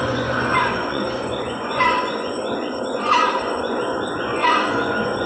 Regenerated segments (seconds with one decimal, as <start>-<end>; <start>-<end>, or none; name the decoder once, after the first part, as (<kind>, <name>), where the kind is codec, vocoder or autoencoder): 0.0-5.3 (vocoder, Vocos)